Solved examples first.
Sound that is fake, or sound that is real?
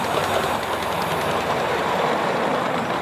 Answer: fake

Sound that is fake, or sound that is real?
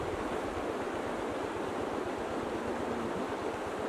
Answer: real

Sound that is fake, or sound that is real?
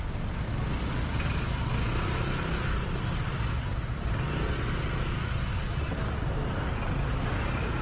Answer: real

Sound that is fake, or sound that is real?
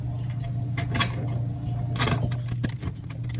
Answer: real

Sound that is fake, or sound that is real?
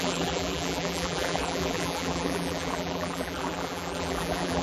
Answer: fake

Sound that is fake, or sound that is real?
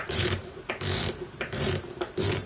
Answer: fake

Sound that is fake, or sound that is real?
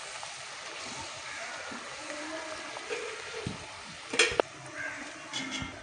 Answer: real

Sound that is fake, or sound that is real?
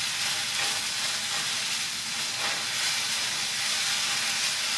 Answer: real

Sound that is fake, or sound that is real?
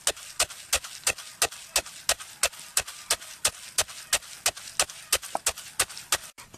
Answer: real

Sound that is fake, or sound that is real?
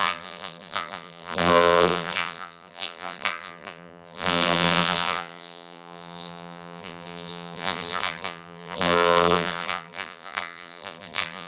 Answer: fake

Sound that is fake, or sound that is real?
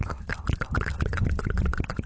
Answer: fake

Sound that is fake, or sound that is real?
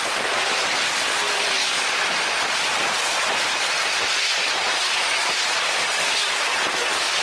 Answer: real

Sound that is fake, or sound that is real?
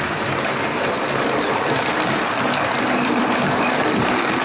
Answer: fake